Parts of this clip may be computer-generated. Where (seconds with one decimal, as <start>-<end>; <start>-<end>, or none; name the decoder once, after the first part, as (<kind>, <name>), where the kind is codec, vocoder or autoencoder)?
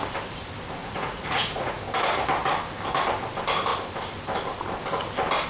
0.8-1.8 (vocoder, Vocos)